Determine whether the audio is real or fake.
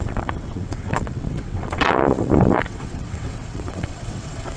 fake